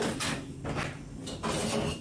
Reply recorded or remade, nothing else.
recorded